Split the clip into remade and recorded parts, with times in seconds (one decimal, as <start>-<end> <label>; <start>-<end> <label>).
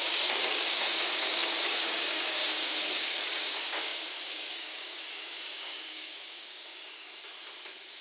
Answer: 0.0-7.3 remade; 7.3-8.0 recorded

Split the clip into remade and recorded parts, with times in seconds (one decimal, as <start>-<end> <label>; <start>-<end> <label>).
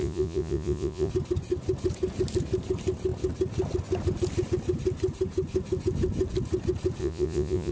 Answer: 0.0-1.1 remade; 1.1-7.0 recorded; 7.0-7.7 remade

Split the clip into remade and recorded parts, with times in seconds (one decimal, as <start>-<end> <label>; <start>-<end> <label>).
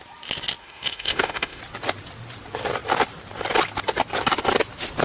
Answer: 0.0-0.6 recorded; 0.6-1.6 remade; 1.6-5.0 recorded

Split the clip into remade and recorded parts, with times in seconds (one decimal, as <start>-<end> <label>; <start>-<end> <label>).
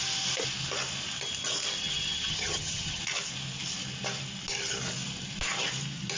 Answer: 0.0-1.8 recorded; 1.8-3.0 remade; 3.0-6.2 recorded